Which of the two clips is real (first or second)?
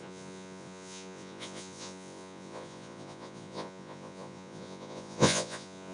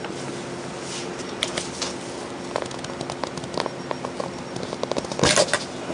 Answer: second